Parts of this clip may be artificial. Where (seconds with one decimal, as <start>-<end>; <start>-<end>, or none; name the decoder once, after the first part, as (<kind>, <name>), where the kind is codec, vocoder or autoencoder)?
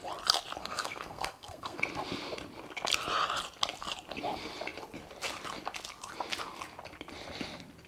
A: 0.6-1.8 (codec, SNAC)